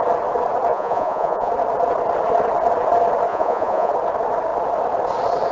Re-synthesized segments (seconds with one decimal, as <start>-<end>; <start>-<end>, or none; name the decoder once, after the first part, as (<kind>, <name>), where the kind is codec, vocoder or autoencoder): 0.7-1.5 (vocoder, Vocos); 3.3-3.9